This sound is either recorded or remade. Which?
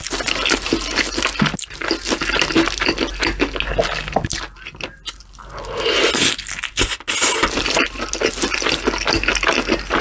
recorded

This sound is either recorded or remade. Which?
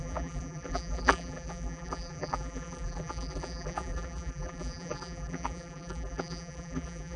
remade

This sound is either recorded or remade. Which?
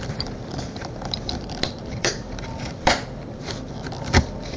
remade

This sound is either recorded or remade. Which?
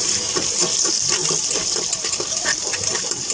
remade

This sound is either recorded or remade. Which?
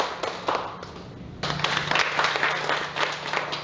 recorded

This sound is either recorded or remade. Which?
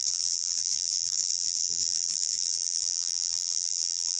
remade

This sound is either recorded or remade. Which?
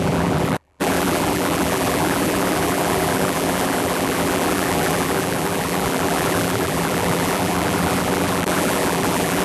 remade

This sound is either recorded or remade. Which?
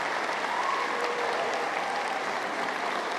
remade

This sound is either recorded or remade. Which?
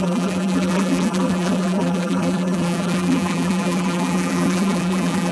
remade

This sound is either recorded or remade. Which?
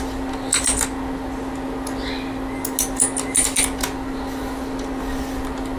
recorded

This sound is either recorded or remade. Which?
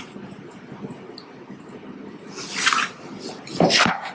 recorded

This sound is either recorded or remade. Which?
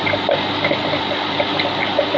recorded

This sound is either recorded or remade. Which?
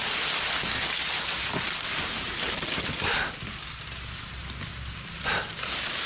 recorded